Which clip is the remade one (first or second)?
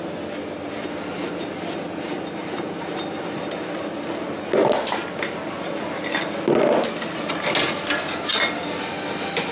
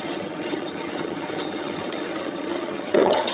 second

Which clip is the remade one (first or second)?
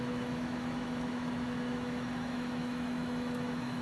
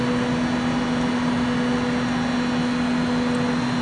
first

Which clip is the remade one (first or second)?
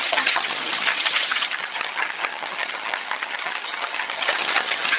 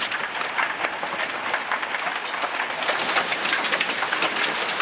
first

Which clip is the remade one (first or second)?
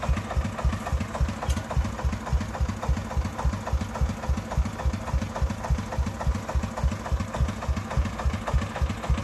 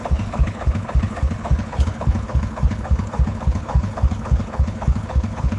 second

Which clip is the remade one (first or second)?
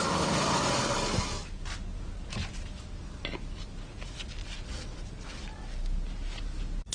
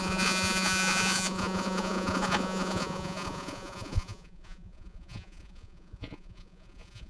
second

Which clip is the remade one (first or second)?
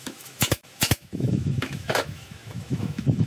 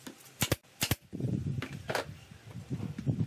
first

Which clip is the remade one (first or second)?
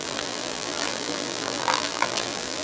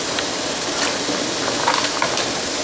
first